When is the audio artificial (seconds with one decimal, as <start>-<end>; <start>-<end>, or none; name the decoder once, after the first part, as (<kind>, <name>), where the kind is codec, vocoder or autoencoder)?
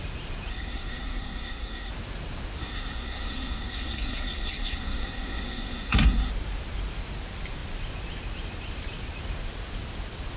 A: 0.5-1.9 (codec, SNAC); 2.6-6.3